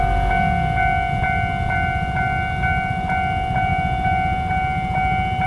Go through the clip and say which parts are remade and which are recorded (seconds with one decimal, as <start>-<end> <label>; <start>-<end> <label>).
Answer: 0.0-5.5 recorded